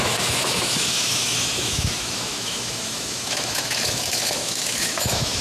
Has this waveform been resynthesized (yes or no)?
yes